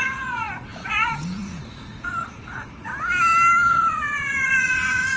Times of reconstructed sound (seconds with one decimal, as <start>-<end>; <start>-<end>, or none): 0.0-2.9; 3.7-5.2